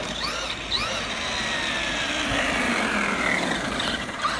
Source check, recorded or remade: recorded